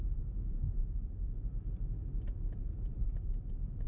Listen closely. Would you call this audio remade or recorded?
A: remade